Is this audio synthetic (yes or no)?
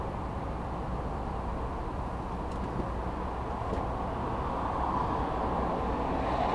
yes